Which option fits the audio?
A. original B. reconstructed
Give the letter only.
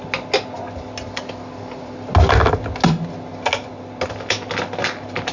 A